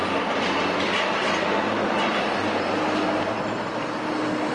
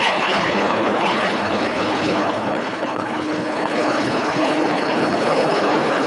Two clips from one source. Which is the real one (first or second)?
first